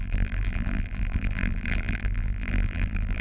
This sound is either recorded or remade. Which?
remade